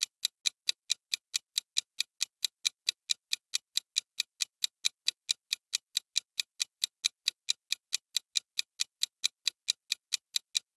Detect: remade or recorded recorded